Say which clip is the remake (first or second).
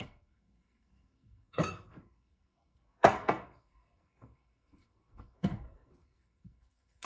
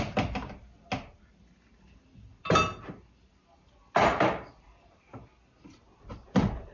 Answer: first